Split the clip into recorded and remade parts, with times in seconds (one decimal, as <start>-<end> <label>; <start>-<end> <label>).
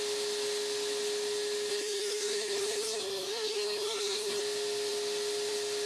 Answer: 0.0-1.7 recorded; 1.7-4.4 remade; 4.4-5.9 recorded